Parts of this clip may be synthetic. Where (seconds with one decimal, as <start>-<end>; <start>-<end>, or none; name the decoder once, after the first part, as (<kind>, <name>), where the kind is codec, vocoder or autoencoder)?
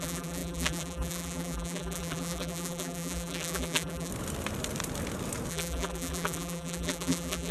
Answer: 0.0-4.1 (vocoder, BigVGAN v2); 5.5-7.5